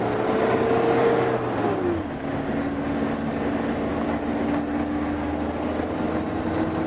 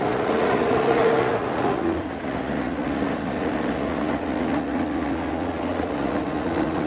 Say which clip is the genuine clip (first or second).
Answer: first